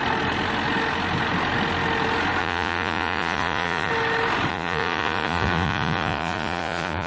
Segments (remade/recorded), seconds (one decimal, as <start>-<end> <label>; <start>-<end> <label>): 0.0-2.4 recorded; 2.4-3.9 remade; 3.9-4.5 recorded; 4.5-7.1 remade